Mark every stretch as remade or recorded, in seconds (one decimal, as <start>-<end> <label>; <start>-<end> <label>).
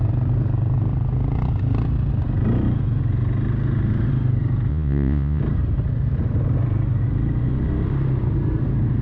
0.0-4.7 recorded; 4.7-5.4 remade; 5.4-9.0 recorded